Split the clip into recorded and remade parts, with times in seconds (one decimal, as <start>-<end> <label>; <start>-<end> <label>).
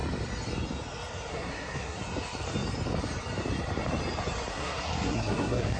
0.0-1.3 recorded; 1.3-2.0 remade; 2.0-4.5 recorded; 4.5-5.8 remade